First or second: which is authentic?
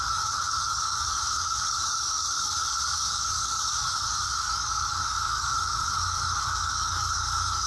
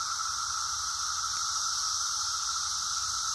second